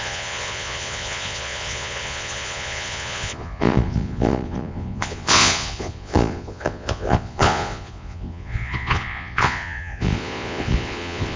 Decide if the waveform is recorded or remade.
remade